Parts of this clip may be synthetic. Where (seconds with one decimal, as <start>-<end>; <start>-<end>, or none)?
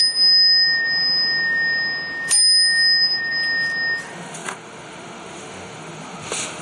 4.0-6.6